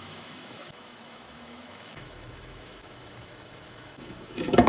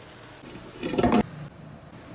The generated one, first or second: first